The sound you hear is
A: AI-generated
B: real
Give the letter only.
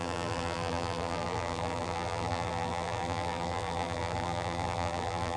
A